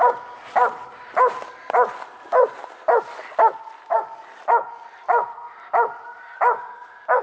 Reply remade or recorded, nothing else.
recorded